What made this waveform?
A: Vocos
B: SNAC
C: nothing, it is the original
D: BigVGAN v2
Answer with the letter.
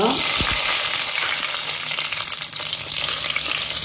C